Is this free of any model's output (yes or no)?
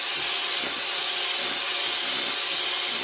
yes